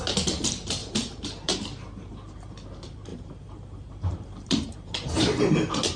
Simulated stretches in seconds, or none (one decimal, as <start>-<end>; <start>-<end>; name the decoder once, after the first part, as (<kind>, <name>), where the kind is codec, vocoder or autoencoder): 0.8-1.6 (vocoder, BigVGAN v2); 3.1-5.4